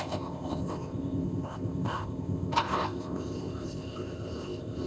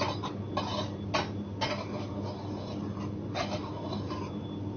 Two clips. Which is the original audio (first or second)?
second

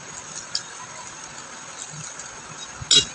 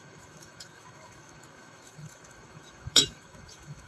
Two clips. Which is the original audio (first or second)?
first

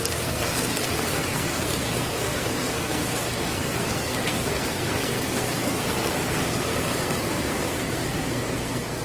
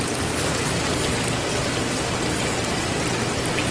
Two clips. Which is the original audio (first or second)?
second